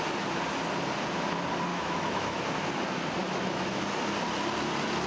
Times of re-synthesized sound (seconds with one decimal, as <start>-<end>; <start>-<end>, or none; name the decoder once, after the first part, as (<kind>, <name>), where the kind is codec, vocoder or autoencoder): 1.7-2.4 (autoencoder, DAC-VAE); 3.2-3.8